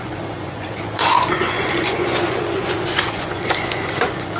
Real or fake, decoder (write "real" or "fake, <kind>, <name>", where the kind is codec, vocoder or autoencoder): fake, vocoder, Vocos